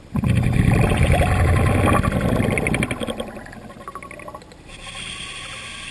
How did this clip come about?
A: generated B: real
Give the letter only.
B